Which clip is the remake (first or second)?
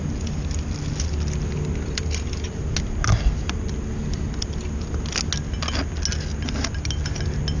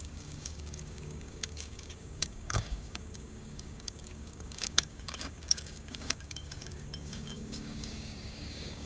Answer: second